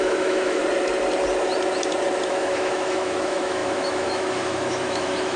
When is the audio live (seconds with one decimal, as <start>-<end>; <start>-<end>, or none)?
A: 0.6-2.3